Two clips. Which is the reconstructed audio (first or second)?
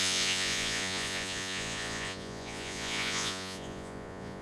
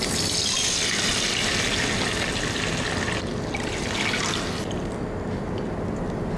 first